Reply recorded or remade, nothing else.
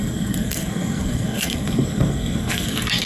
remade